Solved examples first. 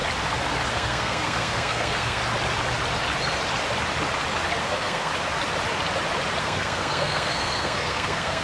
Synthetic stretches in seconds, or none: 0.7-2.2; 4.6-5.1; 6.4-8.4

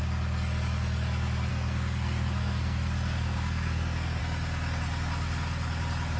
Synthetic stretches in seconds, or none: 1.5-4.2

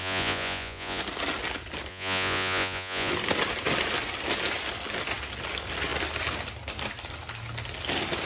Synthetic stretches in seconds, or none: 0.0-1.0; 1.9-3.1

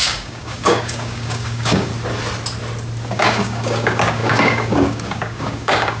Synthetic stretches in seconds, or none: 0.0-1.9; 3.1-6.0

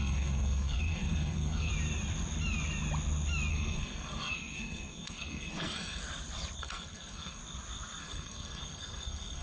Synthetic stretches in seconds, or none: 0.0-1.7; 3.5-6.0; 6.6-7.4; 8.0-9.4

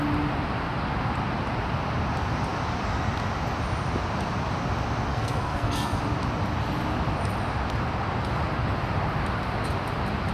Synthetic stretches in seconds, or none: 5.1-6.0

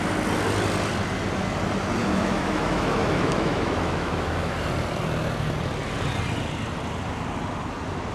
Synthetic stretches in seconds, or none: 2.0-4.5